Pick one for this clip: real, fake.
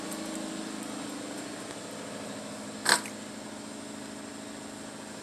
real